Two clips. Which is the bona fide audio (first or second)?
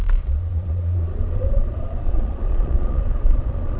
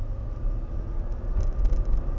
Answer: second